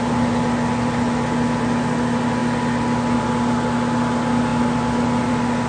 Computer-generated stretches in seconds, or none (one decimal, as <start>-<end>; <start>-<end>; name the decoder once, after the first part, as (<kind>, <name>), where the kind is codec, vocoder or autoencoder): none